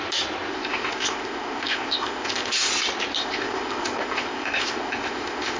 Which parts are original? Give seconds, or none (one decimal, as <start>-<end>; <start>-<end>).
0.0-0.5; 2.7-3.2